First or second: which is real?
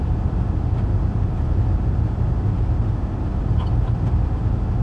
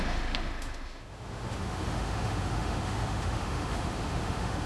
first